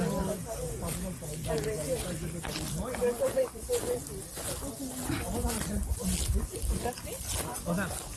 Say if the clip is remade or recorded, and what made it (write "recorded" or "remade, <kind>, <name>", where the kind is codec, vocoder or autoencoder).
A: recorded